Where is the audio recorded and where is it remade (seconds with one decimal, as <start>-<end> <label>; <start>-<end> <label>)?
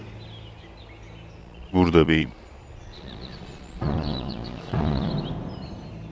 0.0-1.4 recorded; 1.4-5.1 remade; 5.1-6.1 recorded